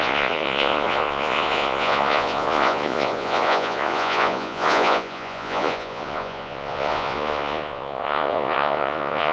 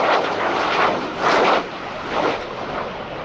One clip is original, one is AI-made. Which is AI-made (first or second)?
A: first